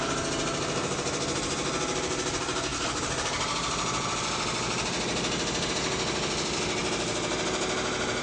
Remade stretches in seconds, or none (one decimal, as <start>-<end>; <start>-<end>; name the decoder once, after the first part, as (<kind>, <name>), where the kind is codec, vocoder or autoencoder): none